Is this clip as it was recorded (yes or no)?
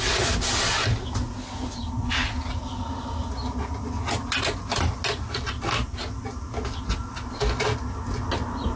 yes